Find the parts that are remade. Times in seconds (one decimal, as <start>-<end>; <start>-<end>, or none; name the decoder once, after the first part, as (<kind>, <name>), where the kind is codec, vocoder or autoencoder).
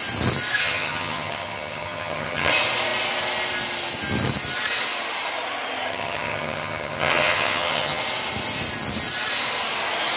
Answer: 0.6-2.5 (vocoder, HiFi-GAN); 5.9-8.0